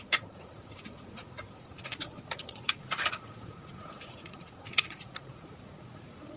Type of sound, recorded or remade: remade